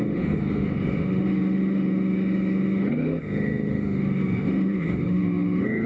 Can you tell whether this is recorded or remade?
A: remade